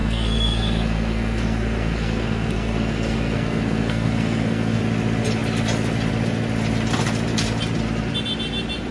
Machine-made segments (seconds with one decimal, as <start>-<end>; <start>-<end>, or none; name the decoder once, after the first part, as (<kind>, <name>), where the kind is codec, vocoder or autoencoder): 0.0-4.8 (codec, SNAC)